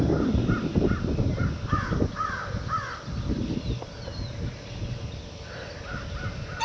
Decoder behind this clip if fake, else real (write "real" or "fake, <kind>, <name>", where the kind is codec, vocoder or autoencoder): real